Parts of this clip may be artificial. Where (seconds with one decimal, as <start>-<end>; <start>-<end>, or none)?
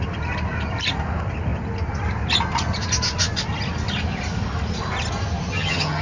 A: 5.5-6.0